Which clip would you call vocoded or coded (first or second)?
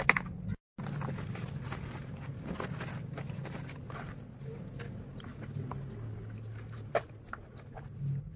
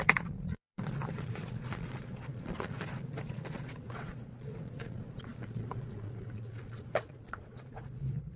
second